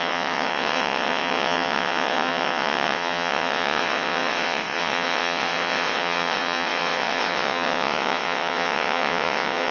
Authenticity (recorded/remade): remade